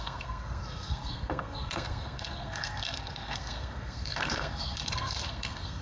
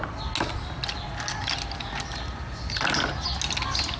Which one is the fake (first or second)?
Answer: first